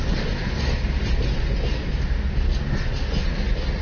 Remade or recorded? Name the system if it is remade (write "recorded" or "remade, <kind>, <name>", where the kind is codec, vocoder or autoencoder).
recorded